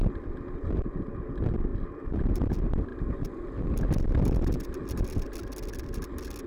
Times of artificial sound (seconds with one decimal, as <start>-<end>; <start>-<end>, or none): 1.7-2.5